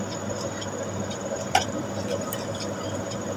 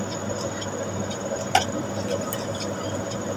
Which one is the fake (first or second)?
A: first